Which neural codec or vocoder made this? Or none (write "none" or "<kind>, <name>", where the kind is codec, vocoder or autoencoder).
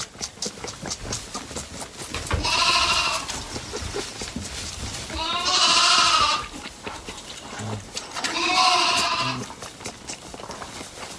none